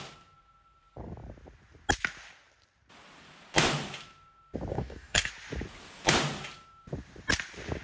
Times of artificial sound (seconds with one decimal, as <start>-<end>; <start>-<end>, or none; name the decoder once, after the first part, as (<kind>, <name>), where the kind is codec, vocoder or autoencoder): 4.7-5.3 (codec, DAC)